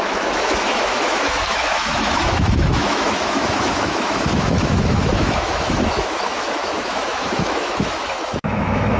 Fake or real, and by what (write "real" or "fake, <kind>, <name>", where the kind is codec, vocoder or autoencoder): fake, autoencoder, DAC-VAE